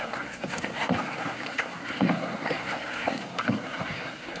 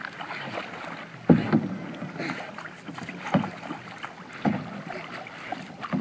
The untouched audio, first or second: second